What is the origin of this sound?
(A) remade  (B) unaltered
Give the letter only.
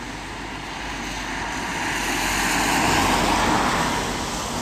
B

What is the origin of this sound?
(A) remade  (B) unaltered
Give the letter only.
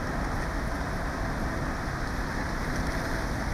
B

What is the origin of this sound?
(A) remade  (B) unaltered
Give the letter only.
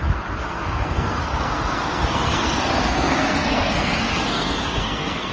A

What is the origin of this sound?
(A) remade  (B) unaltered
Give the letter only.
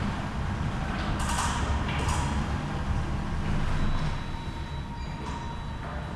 B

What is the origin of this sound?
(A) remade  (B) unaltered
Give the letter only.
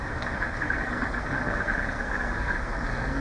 A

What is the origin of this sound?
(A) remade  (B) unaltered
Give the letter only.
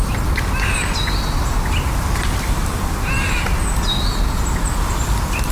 B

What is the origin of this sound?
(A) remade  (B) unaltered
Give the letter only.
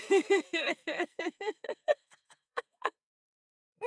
A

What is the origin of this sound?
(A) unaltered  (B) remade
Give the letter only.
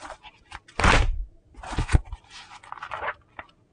A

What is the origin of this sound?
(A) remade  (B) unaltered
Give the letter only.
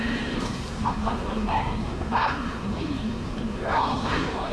A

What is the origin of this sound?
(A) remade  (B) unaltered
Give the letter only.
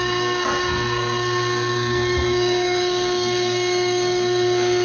A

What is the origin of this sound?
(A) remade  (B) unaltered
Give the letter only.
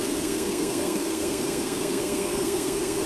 A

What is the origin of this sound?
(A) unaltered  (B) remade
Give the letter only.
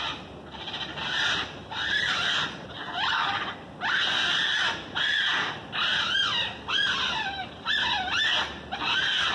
A